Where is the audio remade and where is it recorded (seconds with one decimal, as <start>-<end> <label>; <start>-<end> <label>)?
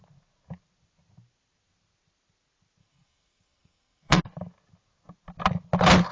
0.0-2.8 recorded; 2.8-4.2 remade; 4.2-6.1 recorded